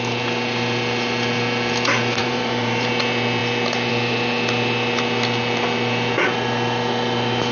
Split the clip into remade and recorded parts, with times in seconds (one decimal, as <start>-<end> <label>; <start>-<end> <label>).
0.0-2.2 recorded; 2.2-2.9 remade; 2.9-7.5 recorded